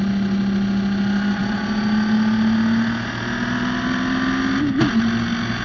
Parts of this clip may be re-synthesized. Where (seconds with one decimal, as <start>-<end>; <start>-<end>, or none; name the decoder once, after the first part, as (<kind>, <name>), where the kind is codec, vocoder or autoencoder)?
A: none